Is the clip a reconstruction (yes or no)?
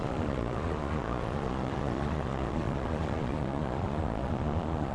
yes